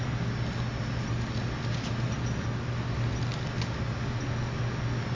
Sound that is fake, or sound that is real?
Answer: real